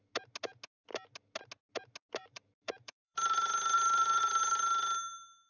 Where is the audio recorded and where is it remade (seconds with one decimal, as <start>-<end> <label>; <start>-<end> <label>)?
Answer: 0.0-2.2 recorded; 2.2-4.6 remade; 4.6-5.5 recorded